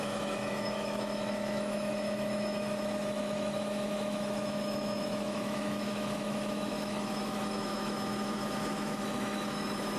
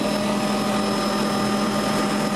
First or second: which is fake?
first